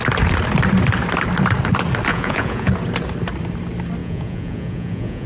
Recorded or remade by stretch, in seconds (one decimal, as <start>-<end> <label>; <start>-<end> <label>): 0.0-2.1 recorded; 2.1-2.7 remade; 2.7-4.0 recorded; 4.0-5.3 remade